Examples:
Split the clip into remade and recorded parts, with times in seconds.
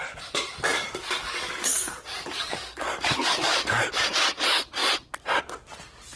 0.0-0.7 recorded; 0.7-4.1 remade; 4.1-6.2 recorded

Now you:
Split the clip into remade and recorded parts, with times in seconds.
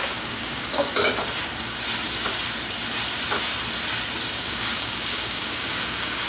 0.0-0.9 remade; 0.9-4.4 recorded; 4.4-6.3 remade